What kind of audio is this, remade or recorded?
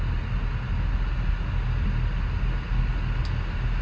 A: recorded